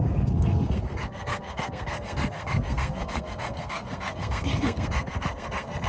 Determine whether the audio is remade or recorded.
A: remade